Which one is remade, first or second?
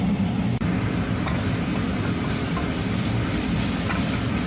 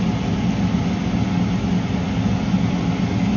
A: first